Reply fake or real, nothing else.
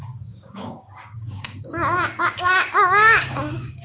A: fake